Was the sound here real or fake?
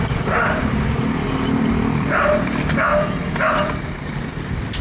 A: real